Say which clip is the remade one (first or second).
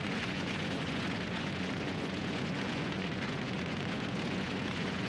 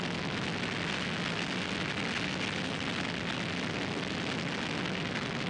first